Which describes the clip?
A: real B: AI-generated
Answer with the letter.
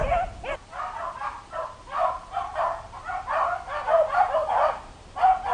A